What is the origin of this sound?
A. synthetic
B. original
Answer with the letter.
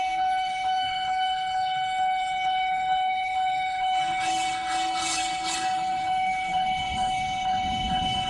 A